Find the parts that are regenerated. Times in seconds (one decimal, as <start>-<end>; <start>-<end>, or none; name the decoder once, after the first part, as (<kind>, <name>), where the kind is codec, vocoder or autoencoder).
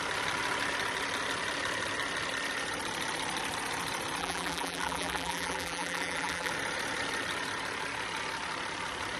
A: 4.2-6.5 (vocoder, BigVGAN v2)